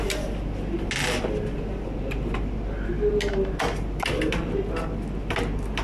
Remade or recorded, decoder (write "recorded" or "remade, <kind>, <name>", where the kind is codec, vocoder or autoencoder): recorded